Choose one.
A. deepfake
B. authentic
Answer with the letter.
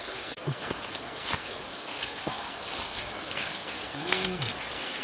A